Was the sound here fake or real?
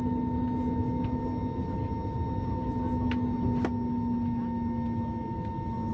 real